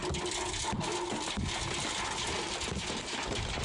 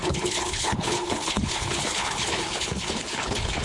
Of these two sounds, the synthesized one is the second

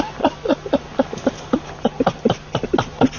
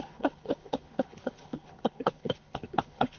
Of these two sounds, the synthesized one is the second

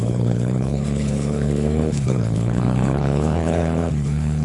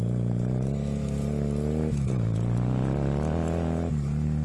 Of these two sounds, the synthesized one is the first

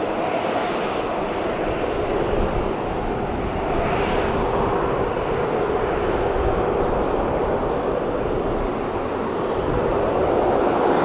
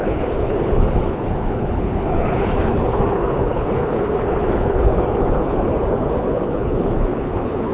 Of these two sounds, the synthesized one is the second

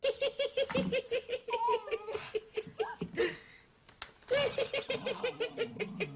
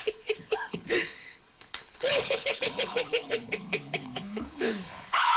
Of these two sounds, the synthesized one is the second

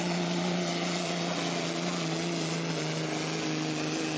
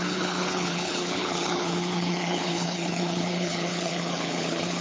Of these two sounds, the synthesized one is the second